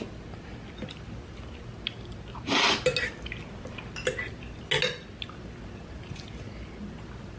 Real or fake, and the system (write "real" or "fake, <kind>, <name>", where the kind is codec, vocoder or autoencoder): real